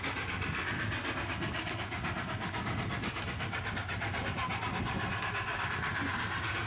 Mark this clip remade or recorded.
recorded